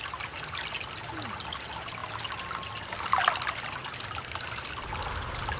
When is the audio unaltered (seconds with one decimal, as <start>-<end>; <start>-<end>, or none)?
0.0-5.6